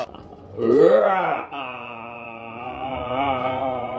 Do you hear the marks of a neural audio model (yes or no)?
yes